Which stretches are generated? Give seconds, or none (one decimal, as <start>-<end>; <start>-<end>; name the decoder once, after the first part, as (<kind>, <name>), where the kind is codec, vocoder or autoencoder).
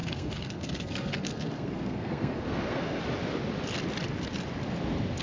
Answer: 0.0-3.0 (codec, SNAC)